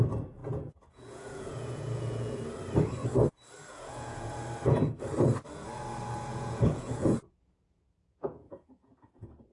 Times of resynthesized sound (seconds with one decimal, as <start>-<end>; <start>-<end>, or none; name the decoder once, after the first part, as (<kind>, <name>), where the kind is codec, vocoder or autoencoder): 0.4-2.4 (vocoder, Vocos); 3.7-4.3; 6.3-9.1